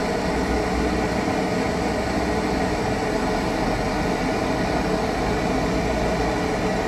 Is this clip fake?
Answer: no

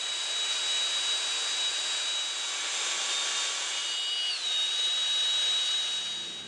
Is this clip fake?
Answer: no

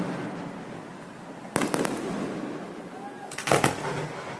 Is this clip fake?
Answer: no